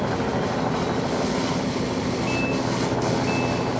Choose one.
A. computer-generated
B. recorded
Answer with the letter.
B